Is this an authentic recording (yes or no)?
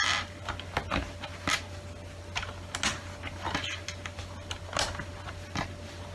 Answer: yes